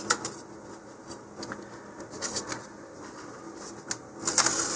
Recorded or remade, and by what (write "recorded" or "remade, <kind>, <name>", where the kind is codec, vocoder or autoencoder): recorded